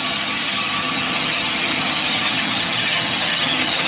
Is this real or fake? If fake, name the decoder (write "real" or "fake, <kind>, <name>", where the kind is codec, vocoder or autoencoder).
fake, vocoder, HiFi-GAN